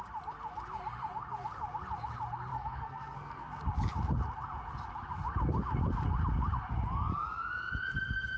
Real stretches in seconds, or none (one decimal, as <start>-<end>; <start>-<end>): 0.0-2.5; 3.6-8.4